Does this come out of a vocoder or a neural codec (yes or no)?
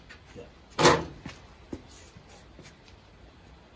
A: no